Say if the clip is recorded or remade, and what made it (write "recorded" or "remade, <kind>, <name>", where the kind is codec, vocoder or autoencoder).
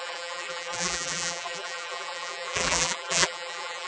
remade, vocoder, BigVGAN v2